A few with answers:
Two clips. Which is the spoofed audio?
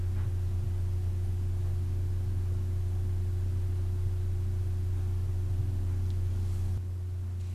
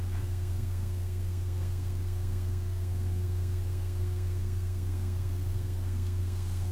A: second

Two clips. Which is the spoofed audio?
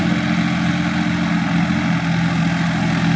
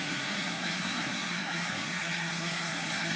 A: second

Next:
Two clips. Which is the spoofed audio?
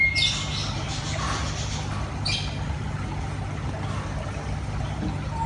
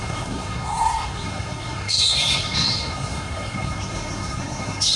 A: second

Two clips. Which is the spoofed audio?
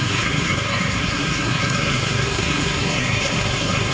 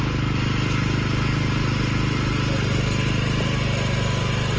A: first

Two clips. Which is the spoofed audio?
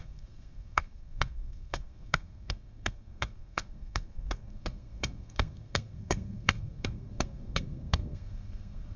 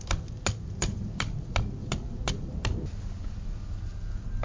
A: first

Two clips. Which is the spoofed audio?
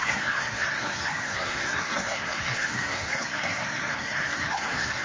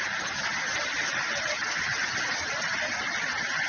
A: first